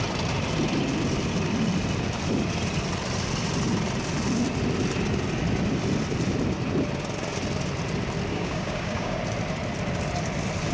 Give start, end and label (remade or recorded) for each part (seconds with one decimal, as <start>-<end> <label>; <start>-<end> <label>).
0.0-8.3 recorded; 8.3-9.2 remade; 9.2-10.7 recorded